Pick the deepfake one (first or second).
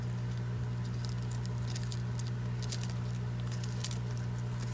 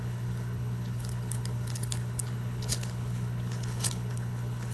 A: second